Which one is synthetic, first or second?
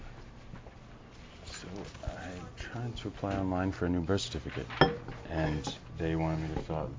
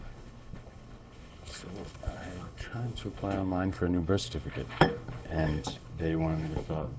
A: second